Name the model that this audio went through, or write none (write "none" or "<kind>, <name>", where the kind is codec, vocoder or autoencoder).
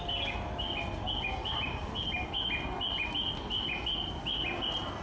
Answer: none